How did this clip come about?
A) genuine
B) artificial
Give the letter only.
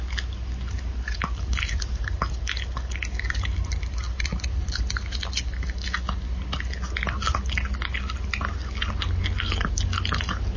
A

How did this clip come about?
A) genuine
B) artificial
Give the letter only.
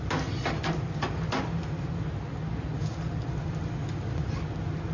A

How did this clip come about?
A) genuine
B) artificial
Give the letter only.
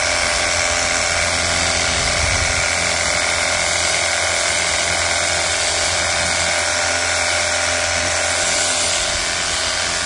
A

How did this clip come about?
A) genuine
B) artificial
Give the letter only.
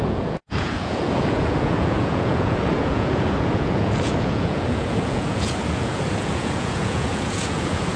B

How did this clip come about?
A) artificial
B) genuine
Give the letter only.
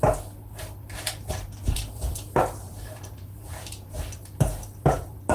A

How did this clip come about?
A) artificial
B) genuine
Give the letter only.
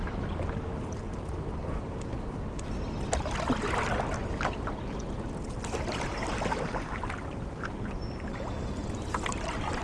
B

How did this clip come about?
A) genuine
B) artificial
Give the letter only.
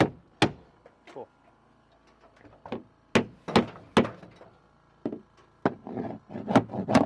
A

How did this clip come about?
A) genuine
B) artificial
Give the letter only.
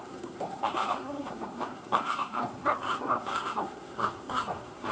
B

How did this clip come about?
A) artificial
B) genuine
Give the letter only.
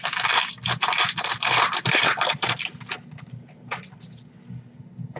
B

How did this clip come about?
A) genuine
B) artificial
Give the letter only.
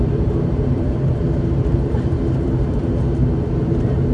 B